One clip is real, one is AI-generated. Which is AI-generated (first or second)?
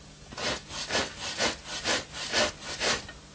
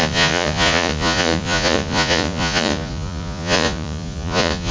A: second